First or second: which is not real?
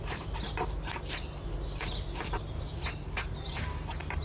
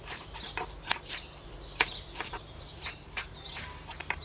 second